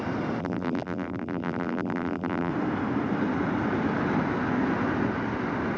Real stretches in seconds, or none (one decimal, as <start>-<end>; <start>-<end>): 0.0-0.4; 2.5-5.8